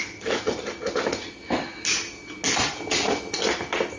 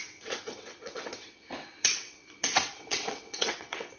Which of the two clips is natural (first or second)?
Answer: first